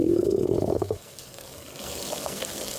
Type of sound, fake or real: fake